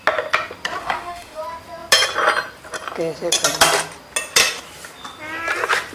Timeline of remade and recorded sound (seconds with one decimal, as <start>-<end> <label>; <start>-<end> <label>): 0.0-0.8 recorded; 0.8-1.4 remade; 1.4-5.9 recorded